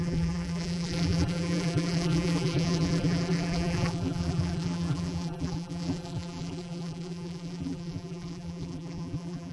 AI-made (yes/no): yes